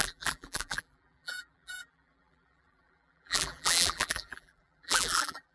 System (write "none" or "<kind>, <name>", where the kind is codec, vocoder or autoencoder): vocoder, BigVGAN v2